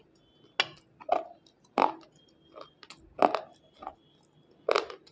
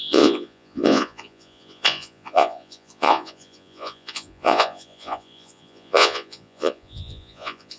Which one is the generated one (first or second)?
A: second